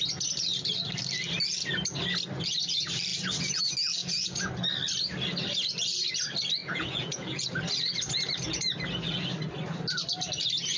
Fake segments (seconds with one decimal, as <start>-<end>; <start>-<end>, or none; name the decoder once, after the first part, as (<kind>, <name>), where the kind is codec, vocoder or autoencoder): 4.0-4.5 (vocoder, Vocos); 6.6-7.5